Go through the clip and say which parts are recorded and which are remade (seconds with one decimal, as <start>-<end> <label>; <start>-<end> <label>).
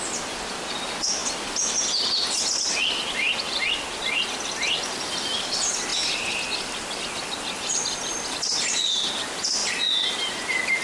0.0-10.8 recorded